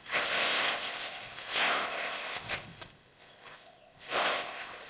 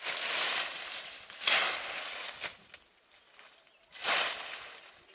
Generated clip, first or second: first